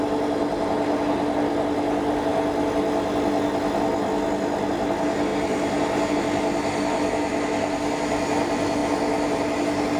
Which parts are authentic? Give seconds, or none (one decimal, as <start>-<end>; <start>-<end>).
0.0-10.0